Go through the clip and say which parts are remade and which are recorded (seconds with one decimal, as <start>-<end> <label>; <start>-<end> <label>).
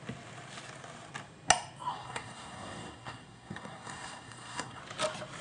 0.0-1.9 recorded; 1.9-4.8 remade; 4.8-5.4 recorded